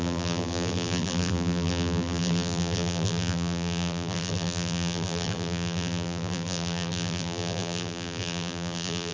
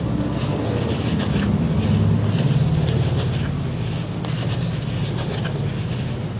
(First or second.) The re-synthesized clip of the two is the first